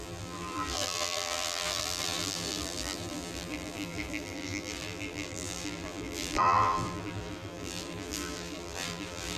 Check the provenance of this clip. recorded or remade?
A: remade